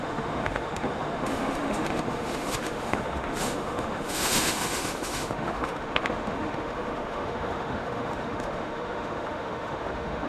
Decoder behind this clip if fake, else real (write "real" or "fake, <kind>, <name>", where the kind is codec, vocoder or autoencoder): fake, autoencoder, DAC-VAE